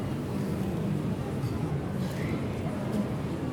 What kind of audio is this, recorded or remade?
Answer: recorded